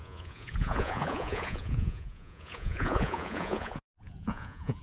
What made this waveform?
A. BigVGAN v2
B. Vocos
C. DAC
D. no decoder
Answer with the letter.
B